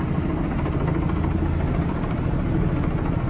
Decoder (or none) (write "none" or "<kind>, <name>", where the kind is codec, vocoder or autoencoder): none